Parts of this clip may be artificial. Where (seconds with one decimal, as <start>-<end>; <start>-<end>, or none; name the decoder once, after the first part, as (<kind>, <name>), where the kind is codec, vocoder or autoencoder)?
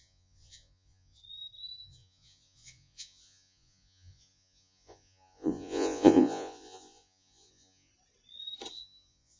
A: 0.0-1.2 (vocoder, Vocos); 1.8-7.9; 8.7-9.4